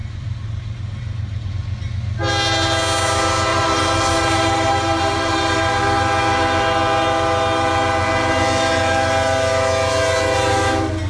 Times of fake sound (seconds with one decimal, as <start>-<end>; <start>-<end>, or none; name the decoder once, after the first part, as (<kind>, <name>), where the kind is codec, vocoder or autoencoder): 0.0-1.5 (vocoder, BigVGAN v2); 3.5-5.4